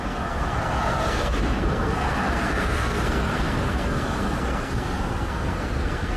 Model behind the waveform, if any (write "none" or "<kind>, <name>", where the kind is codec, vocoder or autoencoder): codec, SNAC